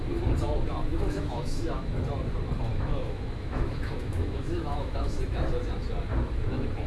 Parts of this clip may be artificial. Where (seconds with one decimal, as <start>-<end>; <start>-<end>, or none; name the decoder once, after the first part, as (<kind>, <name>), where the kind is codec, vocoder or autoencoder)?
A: 0.9-1.9 (autoencoder, DAC-VAE); 2.7-5.2